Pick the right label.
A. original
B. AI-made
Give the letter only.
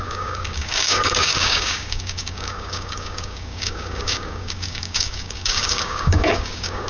B